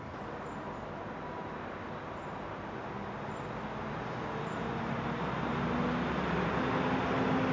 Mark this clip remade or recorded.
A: recorded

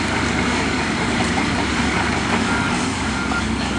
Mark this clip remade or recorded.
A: remade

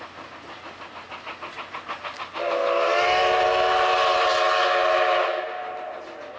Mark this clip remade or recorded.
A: recorded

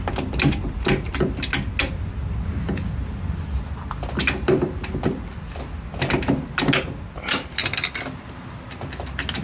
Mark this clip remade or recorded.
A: recorded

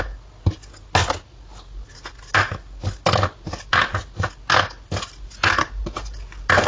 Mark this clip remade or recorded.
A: recorded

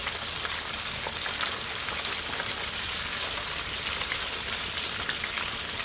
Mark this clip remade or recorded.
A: recorded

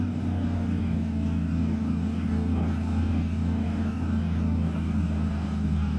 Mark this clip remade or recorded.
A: remade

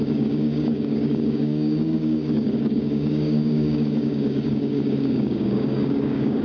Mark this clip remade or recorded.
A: remade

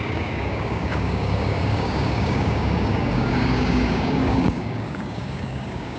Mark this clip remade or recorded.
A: remade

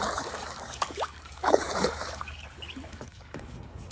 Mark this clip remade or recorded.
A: remade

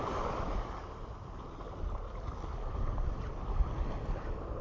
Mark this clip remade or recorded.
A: recorded